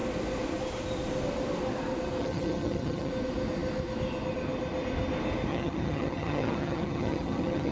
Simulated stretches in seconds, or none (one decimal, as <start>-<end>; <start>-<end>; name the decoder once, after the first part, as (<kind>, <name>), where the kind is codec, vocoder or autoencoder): 2.2-3.1 (vocoder, HiFi-GAN); 5.5-7.7